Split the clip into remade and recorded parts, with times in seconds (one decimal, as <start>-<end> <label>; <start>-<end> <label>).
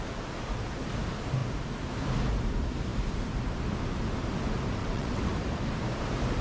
0.0-4.8 recorded; 4.8-5.3 remade; 5.3-6.4 recorded